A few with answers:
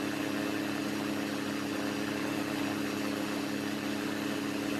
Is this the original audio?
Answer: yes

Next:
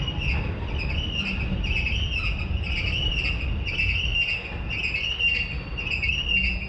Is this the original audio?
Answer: yes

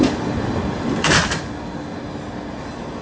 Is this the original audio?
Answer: yes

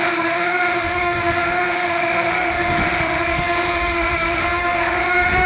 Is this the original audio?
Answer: no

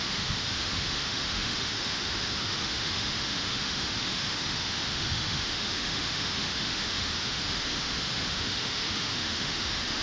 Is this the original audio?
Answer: no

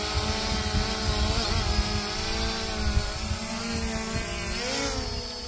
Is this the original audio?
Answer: yes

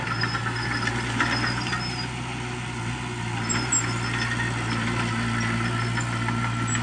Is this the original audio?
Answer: yes